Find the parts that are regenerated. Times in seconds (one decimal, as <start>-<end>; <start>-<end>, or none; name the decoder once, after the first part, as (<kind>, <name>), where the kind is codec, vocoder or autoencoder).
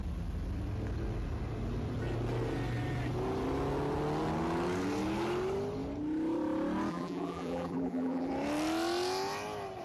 6.9-8.3 (vocoder, BigVGAN v2)